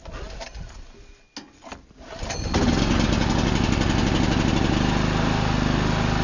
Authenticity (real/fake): real